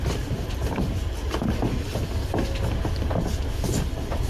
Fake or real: real